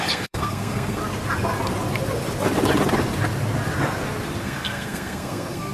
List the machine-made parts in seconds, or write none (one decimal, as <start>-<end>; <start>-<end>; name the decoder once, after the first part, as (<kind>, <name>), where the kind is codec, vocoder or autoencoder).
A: 0.0-1.0 (codec, SNAC); 4.4-5.7